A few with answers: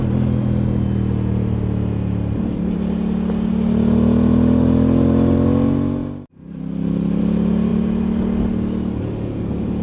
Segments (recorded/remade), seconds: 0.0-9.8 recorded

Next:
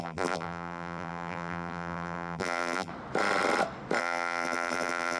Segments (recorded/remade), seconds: 0.0-2.9 remade; 2.9-4.0 recorded; 4.0-5.2 remade

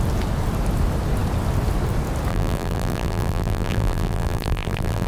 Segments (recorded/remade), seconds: 0.0-2.3 recorded; 2.3-5.1 remade